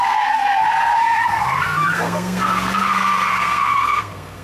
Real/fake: fake